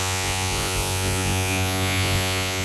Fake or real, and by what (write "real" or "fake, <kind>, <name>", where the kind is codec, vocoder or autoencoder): fake, vocoder, Vocos